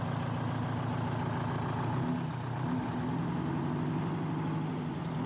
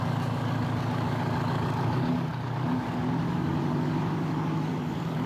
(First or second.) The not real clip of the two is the second